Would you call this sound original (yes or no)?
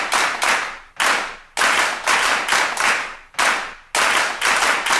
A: yes